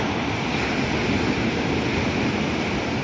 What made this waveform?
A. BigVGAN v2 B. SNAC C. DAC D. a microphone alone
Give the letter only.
D